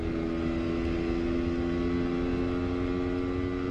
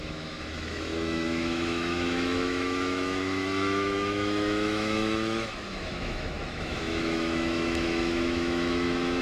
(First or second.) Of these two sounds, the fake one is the second